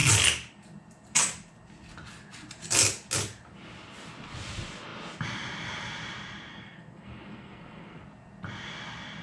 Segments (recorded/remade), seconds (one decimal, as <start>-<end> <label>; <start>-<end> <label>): 0.0-6.5 recorded; 6.5-8.0 remade; 8.0-9.2 recorded

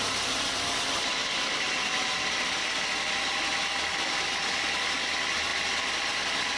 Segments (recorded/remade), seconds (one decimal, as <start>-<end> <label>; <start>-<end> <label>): 0.0-6.6 recorded

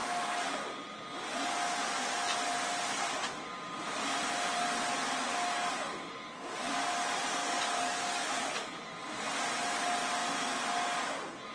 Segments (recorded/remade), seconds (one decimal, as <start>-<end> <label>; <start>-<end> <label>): 0.0-7.4 recorded; 7.4-8.8 remade; 8.8-11.5 recorded

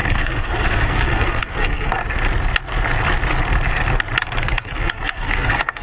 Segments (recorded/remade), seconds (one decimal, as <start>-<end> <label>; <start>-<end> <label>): 0.0-2.0 remade; 2.0-4.4 recorded; 4.4-5.8 remade

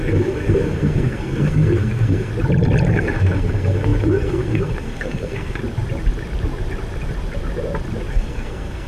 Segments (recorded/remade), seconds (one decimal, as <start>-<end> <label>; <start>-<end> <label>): 0.0-2.3 remade; 2.3-2.9 recorded; 2.9-5.6 remade; 5.6-8.1 recorded; 8.1-8.9 remade

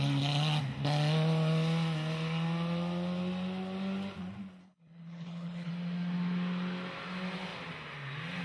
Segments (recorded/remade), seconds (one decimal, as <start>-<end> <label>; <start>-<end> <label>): 0.0-4.6 recorded; 4.6-5.7 remade; 5.7-8.4 recorded

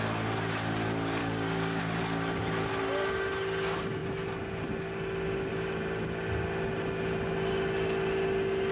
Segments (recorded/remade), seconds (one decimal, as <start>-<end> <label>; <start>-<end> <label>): 0.0-1.2 recorded; 1.2-1.8 remade; 1.8-8.7 recorded